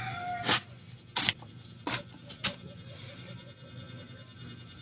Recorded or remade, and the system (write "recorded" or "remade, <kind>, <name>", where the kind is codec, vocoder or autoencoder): recorded